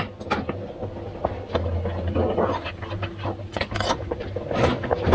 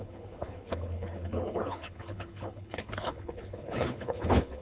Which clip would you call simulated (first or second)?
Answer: second